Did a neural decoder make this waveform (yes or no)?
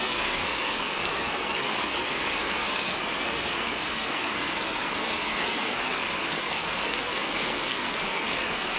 yes